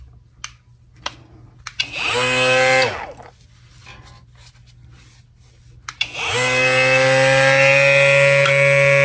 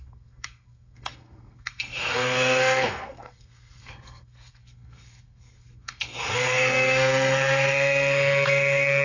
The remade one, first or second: second